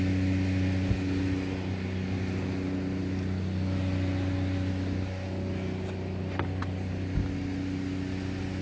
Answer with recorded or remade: recorded